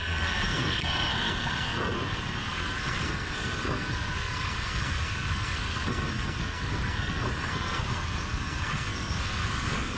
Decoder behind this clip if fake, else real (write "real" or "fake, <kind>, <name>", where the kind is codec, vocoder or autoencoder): fake, codec, SNAC